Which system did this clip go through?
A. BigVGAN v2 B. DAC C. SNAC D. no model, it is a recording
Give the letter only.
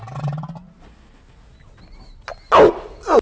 D